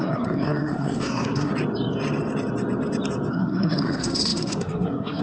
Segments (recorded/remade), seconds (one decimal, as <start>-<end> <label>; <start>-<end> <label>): 0.0-1.5 remade; 1.5-3.3 recorded; 3.3-5.2 remade